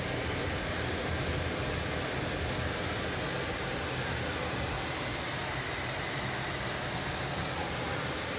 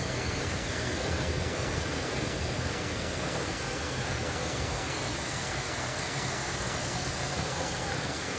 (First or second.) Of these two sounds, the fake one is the second